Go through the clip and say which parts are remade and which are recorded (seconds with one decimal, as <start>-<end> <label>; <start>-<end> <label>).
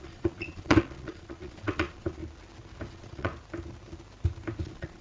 0.0-2.2 remade; 2.2-2.9 recorded; 2.9-3.3 remade; 3.3-4.6 recorded; 4.6-5.0 remade